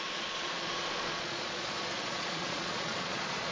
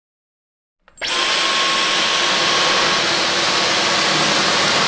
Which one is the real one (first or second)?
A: second